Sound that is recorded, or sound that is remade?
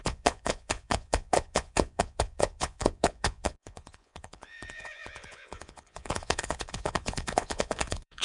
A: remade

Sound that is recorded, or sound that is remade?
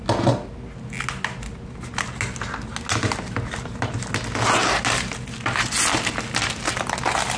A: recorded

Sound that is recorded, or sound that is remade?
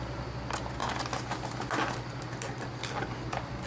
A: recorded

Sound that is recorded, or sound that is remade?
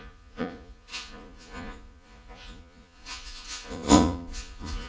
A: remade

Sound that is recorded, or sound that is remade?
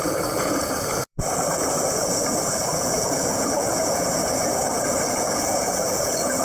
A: remade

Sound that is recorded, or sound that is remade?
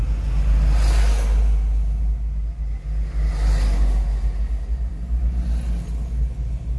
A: recorded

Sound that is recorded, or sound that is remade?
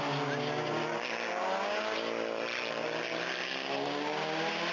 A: recorded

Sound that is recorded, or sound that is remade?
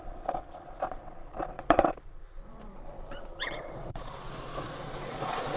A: remade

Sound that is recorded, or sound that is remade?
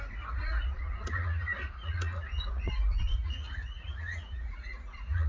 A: remade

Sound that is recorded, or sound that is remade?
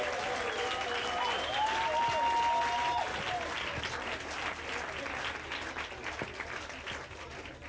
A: recorded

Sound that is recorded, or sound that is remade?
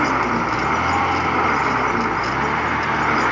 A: recorded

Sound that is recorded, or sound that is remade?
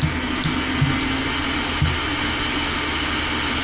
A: recorded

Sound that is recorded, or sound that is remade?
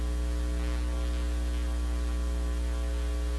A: recorded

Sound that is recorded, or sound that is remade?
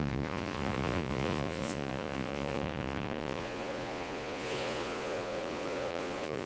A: remade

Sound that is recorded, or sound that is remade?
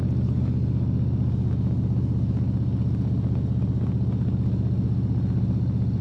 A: recorded